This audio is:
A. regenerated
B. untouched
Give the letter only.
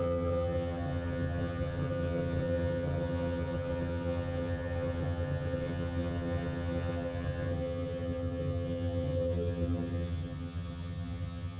A